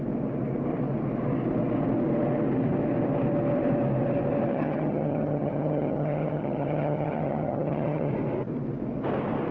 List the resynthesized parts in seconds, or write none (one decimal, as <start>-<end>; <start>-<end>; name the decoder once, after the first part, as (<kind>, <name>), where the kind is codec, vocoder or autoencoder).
4.5-8.1 (vocoder, HiFi-GAN)